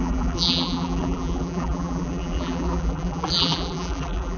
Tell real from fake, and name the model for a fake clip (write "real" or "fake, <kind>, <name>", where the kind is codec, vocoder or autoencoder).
fake, vocoder, BigVGAN v2